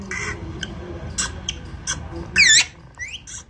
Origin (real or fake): real